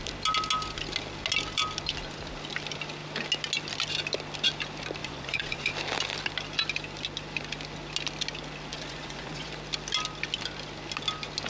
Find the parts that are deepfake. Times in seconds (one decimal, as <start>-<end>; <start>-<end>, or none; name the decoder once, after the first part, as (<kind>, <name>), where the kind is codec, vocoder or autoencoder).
5.0-5.7 (vocoder, Vocos); 8.7-9.5

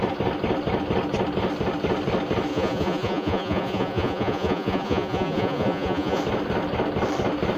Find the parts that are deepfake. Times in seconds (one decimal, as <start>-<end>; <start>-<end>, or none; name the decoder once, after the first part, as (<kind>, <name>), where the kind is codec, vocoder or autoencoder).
2.5-6.2 (vocoder, Vocos)

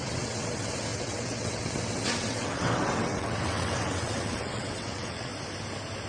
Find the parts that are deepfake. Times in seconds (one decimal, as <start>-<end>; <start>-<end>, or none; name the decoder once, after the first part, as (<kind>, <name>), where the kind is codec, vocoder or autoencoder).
0.0-5.3 (vocoder, WaveNeXt)

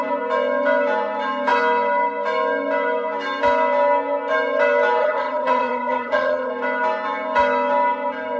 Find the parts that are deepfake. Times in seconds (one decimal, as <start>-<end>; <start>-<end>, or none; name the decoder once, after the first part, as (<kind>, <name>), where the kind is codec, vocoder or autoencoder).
5.0-6.5 (vocoder, HiFi-GAN)

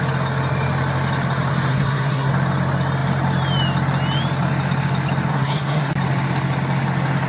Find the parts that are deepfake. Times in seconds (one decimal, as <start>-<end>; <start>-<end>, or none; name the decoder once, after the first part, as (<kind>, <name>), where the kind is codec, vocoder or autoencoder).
1.7-2.3 (codec, SNAC); 5.3-5.9

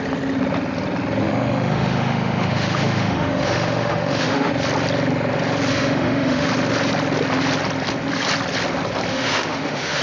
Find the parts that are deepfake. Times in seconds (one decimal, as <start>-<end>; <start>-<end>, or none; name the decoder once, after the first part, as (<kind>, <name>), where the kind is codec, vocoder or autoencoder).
1.2-4.5 (autoencoder, DAC-VAE); 5.7-6.5; 9.1-10.0